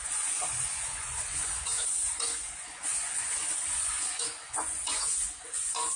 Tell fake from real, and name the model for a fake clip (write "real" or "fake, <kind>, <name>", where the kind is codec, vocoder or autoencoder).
fake, vocoder, Vocos